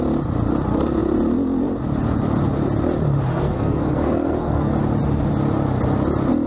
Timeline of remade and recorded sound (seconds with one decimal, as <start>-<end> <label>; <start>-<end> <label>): 0.0-3.3 recorded; 3.3-4.7 remade; 4.7-6.5 recorded